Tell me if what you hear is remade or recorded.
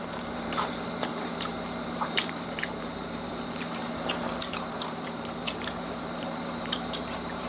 remade